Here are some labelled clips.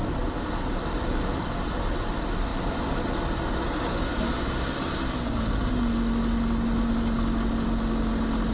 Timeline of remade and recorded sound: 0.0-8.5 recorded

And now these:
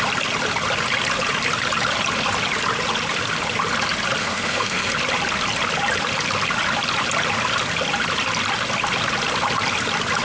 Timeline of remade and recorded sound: 0.0-4.2 recorded; 4.2-4.9 remade; 4.9-10.2 recorded

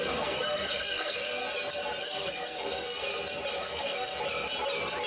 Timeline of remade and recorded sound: 0.0-1.4 remade; 1.4-2.0 recorded; 2.0-3.1 remade; 3.1-3.6 recorded; 3.6-4.1 remade; 4.1-5.1 recorded